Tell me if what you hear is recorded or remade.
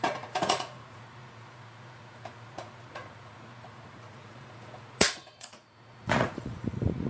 remade